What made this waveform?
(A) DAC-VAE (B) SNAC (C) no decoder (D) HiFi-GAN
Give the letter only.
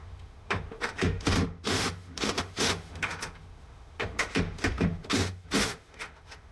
A